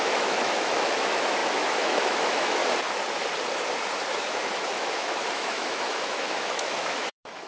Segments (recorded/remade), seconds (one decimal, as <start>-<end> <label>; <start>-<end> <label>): 0.0-2.6 remade; 2.6-4.1 recorded; 4.1-7.5 remade